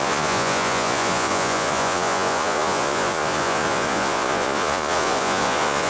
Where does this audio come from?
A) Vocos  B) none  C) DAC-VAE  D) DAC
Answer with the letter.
A